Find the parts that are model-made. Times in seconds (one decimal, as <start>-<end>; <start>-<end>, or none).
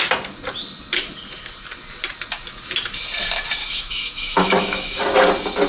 3.6-5.0